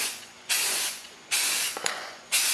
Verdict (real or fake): fake